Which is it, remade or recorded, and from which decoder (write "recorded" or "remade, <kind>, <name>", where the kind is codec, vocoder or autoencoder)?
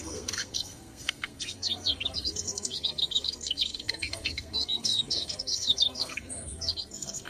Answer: remade, codec, SNAC